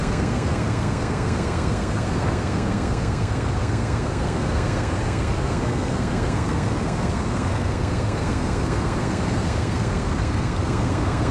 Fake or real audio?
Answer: fake